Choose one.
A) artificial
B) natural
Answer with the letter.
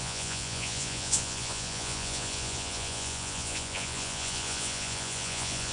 A